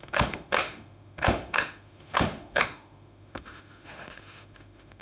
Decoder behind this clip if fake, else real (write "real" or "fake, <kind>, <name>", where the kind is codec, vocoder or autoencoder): fake, autoencoder, DAC-VAE